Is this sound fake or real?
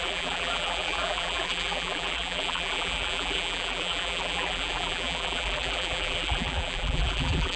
fake